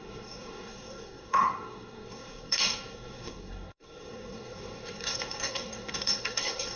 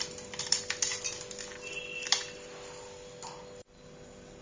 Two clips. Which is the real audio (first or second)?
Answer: second